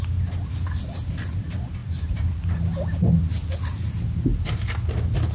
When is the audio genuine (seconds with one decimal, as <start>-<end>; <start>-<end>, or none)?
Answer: 0.0-5.3